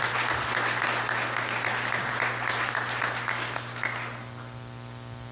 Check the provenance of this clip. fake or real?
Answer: real